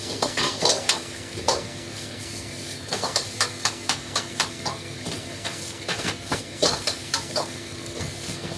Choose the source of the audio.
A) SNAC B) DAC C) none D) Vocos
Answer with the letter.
A